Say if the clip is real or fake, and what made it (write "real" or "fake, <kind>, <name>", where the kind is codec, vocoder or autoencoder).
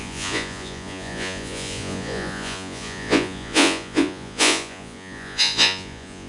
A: fake, vocoder, Vocos